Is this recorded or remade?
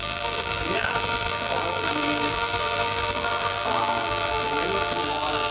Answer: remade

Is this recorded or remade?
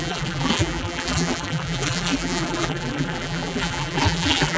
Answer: remade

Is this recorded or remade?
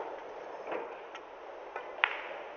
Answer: recorded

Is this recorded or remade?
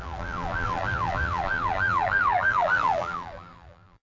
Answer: remade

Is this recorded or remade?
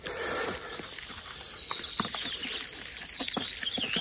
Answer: recorded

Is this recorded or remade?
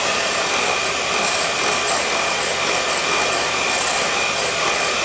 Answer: remade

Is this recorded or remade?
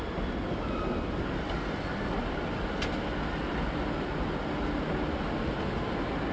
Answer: recorded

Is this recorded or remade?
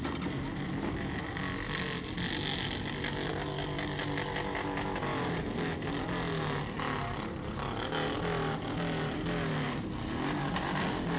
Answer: recorded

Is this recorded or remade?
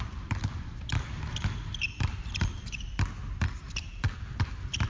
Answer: remade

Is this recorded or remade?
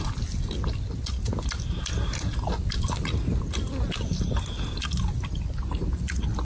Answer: recorded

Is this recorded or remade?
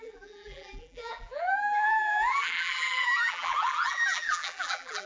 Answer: remade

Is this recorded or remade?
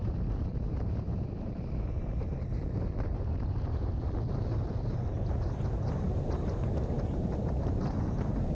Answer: remade